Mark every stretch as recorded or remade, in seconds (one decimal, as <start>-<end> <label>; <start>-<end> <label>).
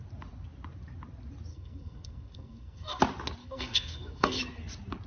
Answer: 0.0-1.5 recorded; 1.5-3.0 remade; 3.0-3.4 recorded; 3.4-4.4 remade; 4.4-5.1 recorded